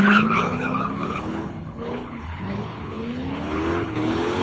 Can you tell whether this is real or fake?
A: fake